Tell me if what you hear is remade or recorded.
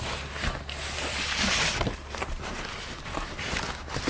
recorded